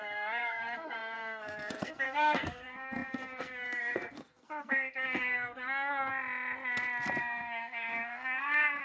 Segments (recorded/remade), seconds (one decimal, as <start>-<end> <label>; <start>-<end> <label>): 0.0-6.1 remade; 6.1-7.2 recorded; 7.2-8.8 remade